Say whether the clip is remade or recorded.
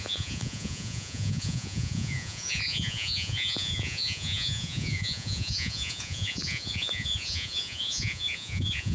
remade